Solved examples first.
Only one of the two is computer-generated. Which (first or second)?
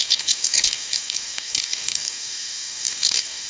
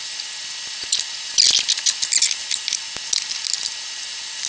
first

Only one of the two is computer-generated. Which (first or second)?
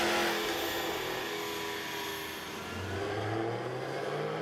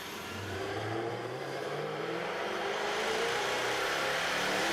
second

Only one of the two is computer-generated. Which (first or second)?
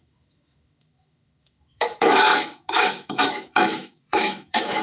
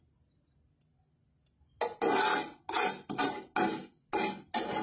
first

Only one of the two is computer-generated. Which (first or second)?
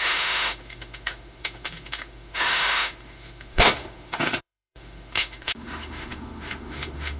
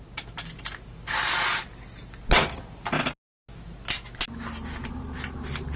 first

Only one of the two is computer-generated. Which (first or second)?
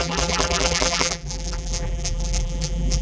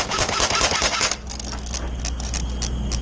first